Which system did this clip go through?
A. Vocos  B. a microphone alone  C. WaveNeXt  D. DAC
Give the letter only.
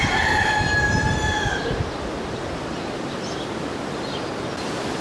B